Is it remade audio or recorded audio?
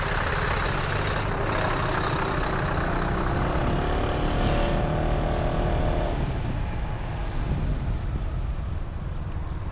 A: recorded